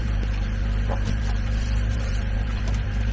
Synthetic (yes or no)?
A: yes